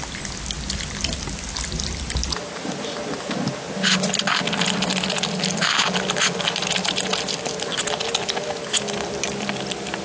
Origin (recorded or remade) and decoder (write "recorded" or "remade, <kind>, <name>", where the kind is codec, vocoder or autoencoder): recorded